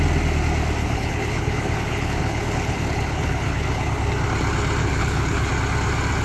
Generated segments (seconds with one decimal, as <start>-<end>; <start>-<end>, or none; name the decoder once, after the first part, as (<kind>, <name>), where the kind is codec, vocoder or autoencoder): 0.8-4.1 (codec, HILCodec); 4.8-5.5